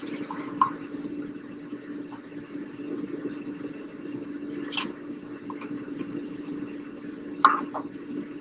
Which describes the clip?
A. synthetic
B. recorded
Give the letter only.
B